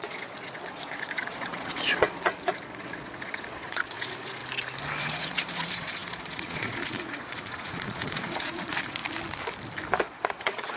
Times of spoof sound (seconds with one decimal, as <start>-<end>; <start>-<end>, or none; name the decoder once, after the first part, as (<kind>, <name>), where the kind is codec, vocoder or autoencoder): 0.0-4.4 (vocoder, Vocos); 5.0-9.0; 10.0-10.8